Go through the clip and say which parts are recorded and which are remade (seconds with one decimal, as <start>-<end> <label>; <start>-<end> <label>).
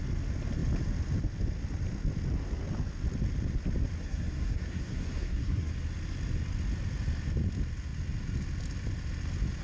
0.0-4.0 recorded; 4.0-5.7 remade; 5.7-9.6 recorded